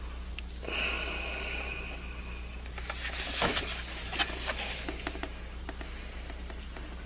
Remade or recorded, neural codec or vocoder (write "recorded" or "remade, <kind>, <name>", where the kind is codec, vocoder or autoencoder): recorded